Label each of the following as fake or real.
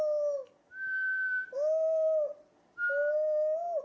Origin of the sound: real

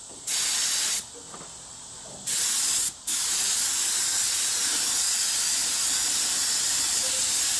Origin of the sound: real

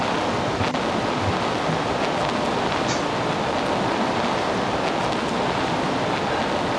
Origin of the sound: real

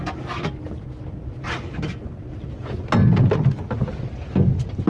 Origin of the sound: real